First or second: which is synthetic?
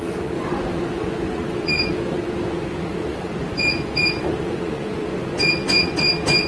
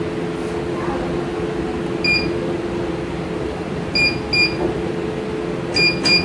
first